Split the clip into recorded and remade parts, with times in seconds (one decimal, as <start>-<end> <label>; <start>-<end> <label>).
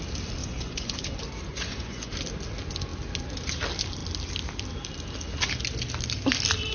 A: 0.0-0.4 recorded; 0.4-1.0 remade; 1.0-1.5 recorded; 1.5-2.1 remade; 2.1-6.7 recorded